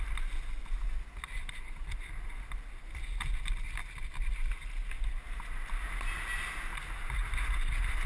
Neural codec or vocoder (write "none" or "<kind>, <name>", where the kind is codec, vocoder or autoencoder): none